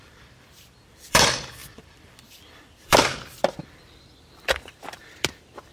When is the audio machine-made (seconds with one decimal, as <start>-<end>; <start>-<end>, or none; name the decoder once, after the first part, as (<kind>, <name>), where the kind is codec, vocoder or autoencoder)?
0.0-5.7 (vocoder, BigVGAN v2)